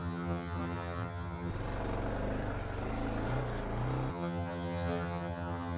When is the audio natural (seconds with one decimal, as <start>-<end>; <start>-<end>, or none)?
1.5-4.1